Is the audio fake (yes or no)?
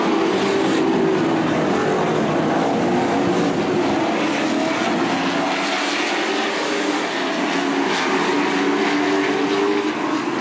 no